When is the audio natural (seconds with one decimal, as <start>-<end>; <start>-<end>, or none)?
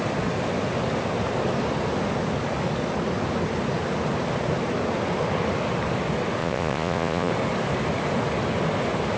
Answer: 0.0-6.4; 7.3-9.2